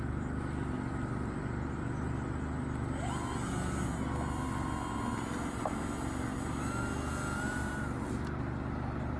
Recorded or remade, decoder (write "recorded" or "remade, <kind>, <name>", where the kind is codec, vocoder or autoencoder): recorded